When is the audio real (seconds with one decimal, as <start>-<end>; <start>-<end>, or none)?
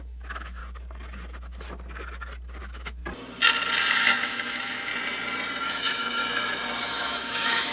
0.6-2.6; 3.0-3.9; 4.9-5.7; 6.2-6.8